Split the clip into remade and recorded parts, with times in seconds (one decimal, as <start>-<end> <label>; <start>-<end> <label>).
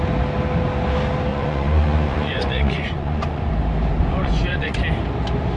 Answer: 0.0-1.3 recorded; 1.3-3.5 remade; 3.5-3.9 recorded; 3.9-4.8 remade; 4.8-5.6 recorded